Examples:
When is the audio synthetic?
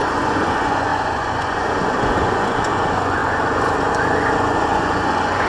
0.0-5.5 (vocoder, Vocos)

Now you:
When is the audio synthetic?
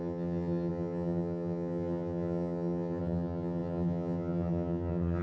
0.0-5.2 (vocoder, HiFi-GAN)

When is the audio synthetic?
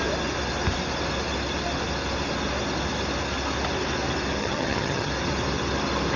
4.4-5.1 (vocoder, HiFi-GAN)